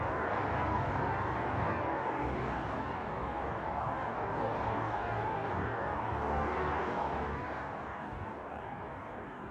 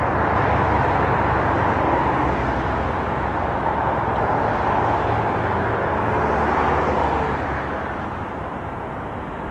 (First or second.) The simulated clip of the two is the first